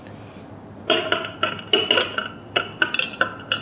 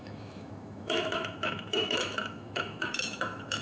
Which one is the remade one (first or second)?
second